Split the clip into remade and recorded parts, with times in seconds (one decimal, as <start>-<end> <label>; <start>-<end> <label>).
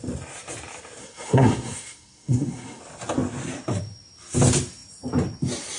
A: 0.0-1.0 recorded; 1.0-2.8 remade; 2.8-5.8 recorded